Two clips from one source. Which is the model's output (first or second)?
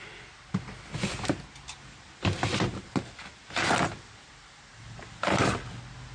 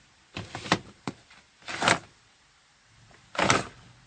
second